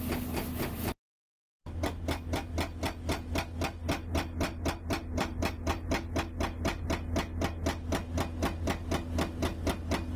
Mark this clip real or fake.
real